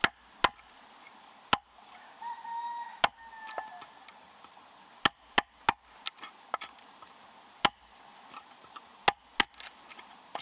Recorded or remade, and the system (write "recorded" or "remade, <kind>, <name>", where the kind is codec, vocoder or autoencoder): recorded